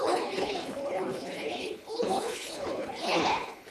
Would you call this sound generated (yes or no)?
yes